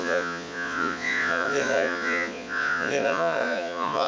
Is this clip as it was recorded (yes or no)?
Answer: no